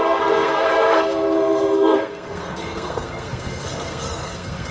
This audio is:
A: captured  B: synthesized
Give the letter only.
B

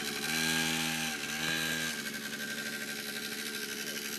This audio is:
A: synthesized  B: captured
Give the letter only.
B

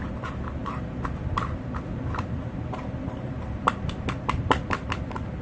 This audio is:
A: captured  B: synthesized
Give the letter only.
A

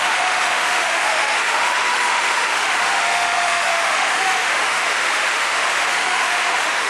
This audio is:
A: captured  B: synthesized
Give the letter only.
B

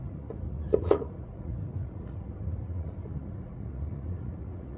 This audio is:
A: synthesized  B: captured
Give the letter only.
A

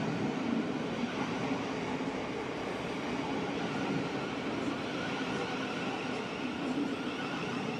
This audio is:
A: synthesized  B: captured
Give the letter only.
B